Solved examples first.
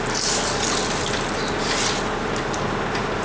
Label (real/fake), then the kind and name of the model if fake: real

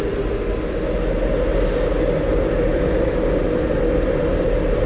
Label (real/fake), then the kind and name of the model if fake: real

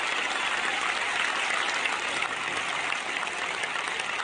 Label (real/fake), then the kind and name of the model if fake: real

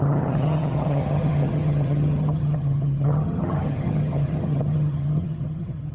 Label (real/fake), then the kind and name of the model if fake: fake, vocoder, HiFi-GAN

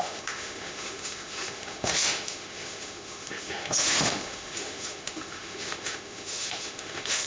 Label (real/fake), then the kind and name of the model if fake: fake, autoencoder, DAC-VAE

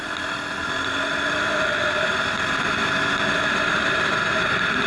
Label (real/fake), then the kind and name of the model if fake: real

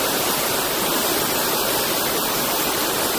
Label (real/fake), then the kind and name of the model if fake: real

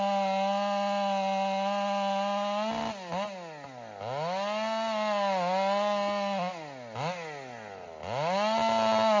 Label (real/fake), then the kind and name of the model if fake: real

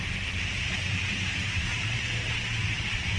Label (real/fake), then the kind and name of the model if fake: fake, vocoder, BigVGAN v2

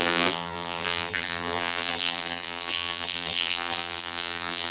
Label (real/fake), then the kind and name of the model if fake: fake, vocoder, BigVGAN v2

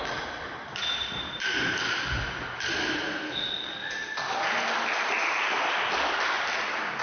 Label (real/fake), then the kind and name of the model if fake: real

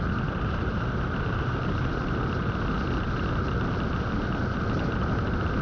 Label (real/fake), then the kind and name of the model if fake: real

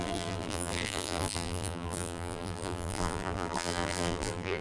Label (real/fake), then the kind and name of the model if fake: fake, vocoder, BigVGAN v2